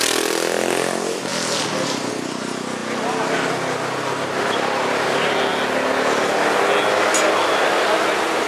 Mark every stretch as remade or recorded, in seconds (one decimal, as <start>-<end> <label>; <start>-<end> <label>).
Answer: 0.0-8.5 recorded